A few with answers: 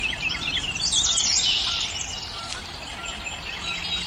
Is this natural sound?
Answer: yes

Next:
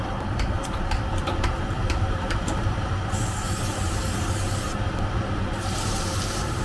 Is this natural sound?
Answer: no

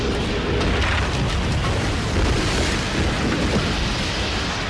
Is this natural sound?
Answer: yes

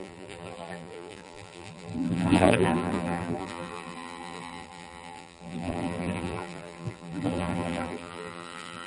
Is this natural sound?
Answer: no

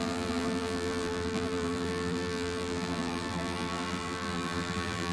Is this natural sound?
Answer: no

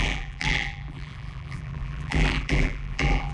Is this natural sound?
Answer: no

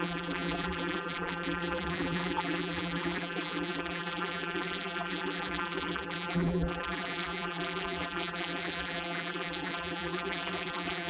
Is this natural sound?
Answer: no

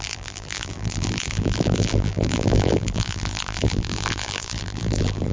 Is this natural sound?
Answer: no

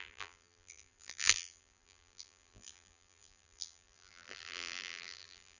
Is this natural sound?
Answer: no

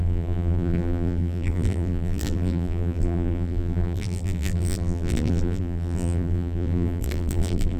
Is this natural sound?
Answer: no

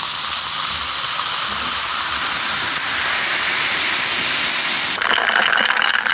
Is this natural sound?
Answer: yes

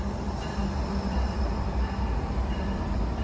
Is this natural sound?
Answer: no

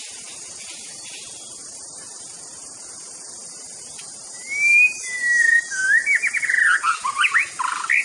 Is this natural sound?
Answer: yes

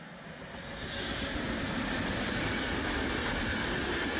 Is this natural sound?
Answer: yes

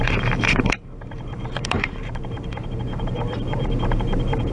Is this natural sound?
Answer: no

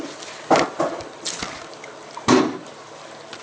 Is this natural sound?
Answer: yes